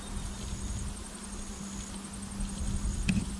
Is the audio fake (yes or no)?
no